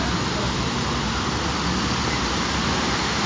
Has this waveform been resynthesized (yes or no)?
no